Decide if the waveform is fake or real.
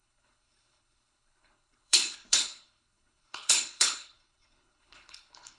fake